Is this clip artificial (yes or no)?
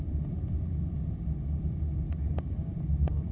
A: yes